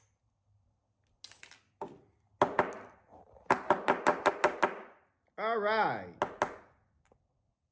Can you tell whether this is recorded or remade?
recorded